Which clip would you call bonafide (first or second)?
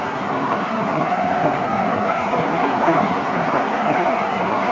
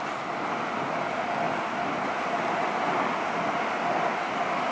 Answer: second